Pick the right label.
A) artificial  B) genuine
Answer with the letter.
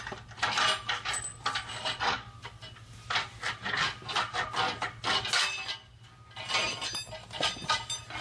B